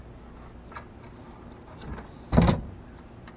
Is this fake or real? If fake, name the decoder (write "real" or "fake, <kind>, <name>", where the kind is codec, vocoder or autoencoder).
real